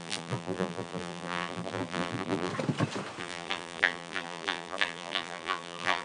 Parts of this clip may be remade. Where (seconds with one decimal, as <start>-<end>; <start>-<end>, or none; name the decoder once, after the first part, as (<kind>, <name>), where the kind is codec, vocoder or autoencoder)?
0.0-2.5 (vocoder, BigVGAN v2); 3.2-6.0